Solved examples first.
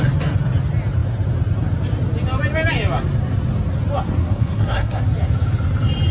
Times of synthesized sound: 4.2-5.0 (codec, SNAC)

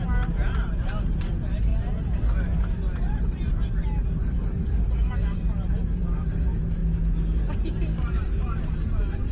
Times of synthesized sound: 0.0-6.8 (vocoder, BigVGAN v2); 7.5-9.3

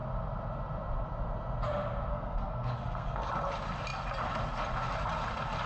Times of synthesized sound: 2.1-3.3 (codec, SNAC)

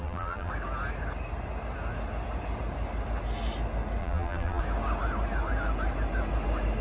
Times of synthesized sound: 0.0-0.5 (vocoder, BigVGAN v2); 4.0-4.6

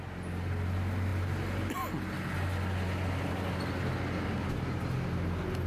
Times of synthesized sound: none